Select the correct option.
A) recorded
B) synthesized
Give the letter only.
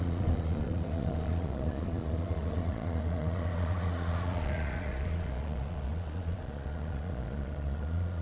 B